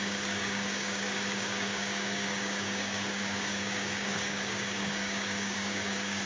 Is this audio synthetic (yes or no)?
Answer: yes